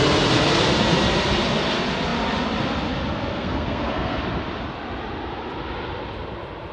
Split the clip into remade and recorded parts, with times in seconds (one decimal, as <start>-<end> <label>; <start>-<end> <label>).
0.0-3.3 recorded; 3.3-4.2 remade; 4.2-6.7 recorded